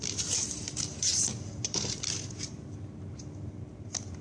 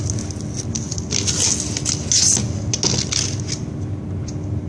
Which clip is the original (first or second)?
second